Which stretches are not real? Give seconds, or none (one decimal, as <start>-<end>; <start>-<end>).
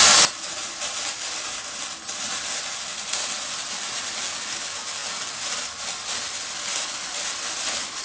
none